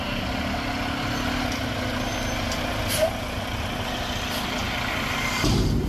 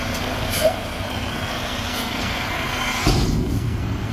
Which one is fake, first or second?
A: second